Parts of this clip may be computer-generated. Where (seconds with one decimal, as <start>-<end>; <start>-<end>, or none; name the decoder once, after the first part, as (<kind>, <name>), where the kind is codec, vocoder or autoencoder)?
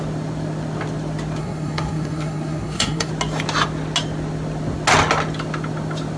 1.4-3.1 (codec, SNAC)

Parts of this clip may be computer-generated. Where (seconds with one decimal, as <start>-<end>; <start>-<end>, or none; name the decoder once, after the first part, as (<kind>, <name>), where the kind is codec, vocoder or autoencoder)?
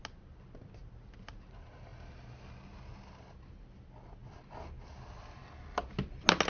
none